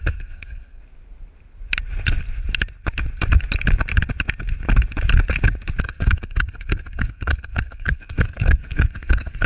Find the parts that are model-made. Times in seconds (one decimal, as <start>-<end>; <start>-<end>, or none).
0.0-0.8; 5.8-9.5